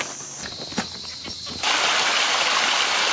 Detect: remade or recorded recorded